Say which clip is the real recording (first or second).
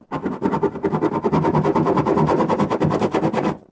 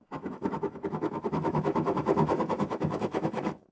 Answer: first